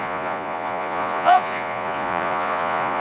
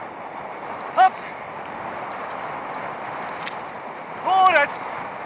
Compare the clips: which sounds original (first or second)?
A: second